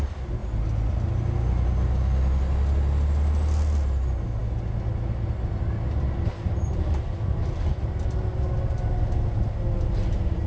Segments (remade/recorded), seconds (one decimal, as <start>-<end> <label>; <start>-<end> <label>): 0.0-10.5 recorded